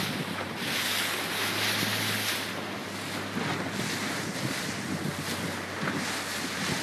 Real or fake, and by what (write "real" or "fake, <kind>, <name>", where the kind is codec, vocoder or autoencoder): real